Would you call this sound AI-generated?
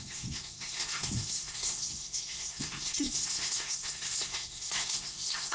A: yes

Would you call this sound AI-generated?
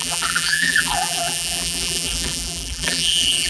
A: yes